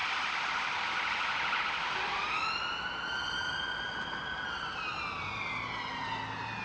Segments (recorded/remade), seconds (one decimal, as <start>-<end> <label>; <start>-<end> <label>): 0.0-6.6 recorded